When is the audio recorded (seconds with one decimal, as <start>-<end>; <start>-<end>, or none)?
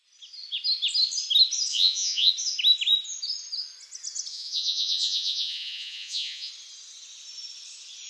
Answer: 0.0-1.7; 2.3-4.3; 6.5-8.1